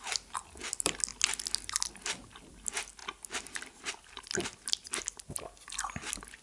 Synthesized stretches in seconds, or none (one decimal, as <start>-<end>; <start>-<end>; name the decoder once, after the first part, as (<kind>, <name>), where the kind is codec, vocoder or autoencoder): none